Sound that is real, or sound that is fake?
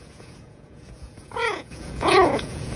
fake